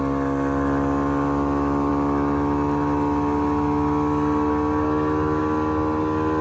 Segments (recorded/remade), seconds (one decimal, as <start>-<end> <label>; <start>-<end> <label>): 0.0-6.4 recorded